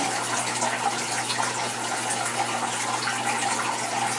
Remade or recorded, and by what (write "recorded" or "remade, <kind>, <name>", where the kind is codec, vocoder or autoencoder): recorded